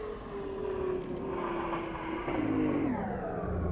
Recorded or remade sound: recorded